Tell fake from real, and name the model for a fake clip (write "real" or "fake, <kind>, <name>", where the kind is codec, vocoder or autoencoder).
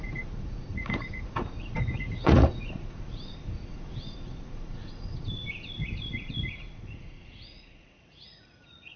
fake, vocoder, Vocos